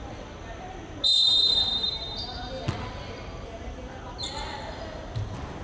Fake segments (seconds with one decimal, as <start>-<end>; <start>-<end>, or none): none